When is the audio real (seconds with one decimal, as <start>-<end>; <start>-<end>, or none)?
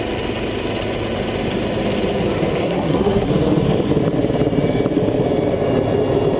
0.0-2.6; 3.3-6.4